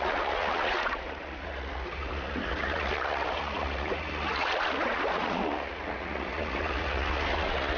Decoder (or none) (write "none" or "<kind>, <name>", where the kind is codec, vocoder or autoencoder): vocoder, Vocos